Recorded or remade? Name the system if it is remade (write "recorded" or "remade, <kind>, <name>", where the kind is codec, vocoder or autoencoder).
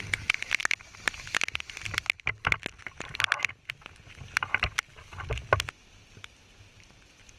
recorded